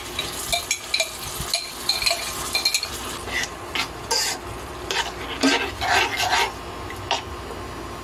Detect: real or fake real